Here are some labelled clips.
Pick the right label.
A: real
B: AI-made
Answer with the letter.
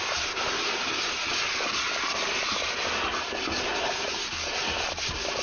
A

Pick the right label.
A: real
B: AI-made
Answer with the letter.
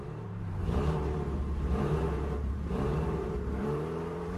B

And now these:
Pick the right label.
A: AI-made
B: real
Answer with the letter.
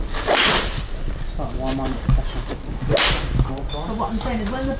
B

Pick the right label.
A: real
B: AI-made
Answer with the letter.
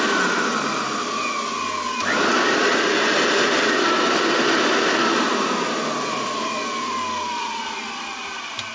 A